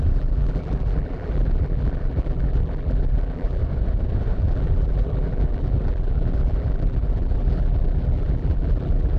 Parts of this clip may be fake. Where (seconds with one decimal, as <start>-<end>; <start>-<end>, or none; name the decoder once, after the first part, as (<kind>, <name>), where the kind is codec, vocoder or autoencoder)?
0.0-3.6 (vocoder, BigVGAN v2); 4.4-9.2